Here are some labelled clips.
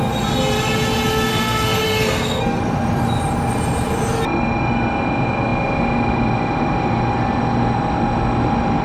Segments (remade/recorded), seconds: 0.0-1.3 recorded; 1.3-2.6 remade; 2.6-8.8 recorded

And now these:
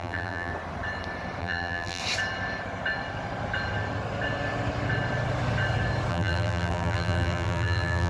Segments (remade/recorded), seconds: 0.0-0.5 remade; 0.5-1.4 recorded; 1.4-2.0 remade; 2.0-6.1 recorded; 6.1-8.1 remade

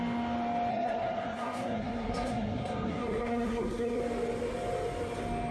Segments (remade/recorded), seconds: 0.0-0.7 recorded; 0.7-4.0 remade; 4.0-5.5 recorded